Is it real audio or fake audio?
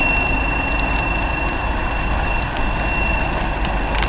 real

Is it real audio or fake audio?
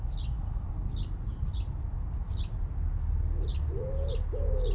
real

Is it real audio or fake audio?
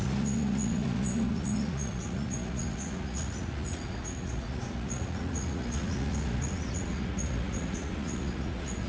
fake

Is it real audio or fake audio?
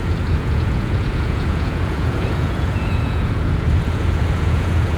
fake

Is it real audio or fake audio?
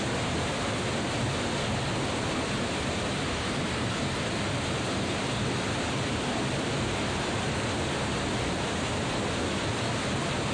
real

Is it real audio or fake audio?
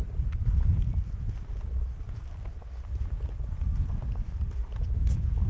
real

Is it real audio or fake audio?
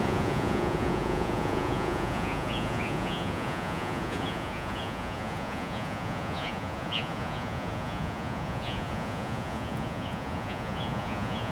fake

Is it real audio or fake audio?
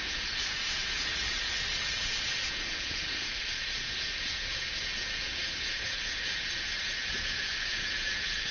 fake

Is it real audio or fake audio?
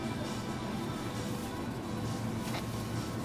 real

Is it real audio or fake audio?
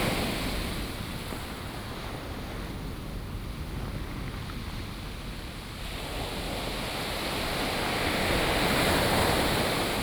real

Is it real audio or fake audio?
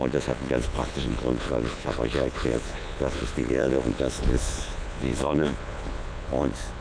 fake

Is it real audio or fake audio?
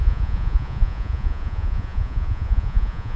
fake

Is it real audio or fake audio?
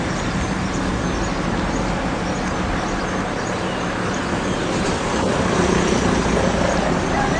real